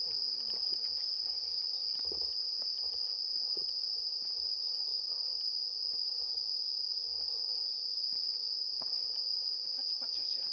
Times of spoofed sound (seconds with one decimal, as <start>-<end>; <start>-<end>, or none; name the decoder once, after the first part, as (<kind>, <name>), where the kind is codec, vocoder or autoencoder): none